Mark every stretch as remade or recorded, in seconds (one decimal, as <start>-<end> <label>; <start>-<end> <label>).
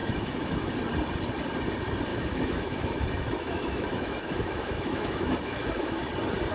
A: 0.0-0.7 remade; 0.7-2.1 recorded; 2.1-6.0 remade; 6.0-6.5 recorded